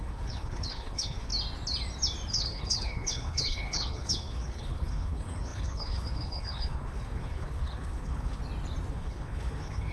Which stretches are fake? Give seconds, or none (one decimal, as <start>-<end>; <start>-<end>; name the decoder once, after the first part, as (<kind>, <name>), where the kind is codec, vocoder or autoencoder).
0.0-1.3 (codec, HILCodec); 2.3-8.4; 8.9-9.9